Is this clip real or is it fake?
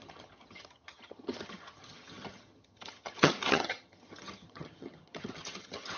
fake